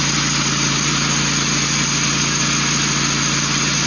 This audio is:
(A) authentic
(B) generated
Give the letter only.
A